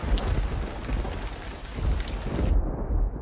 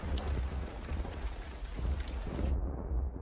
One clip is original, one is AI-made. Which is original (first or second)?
first